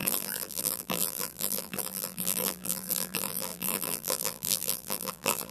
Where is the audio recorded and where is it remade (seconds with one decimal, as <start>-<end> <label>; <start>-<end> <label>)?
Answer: 0.0-5.5 remade